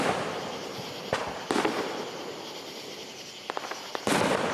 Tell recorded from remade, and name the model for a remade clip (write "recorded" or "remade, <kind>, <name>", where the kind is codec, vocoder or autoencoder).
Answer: recorded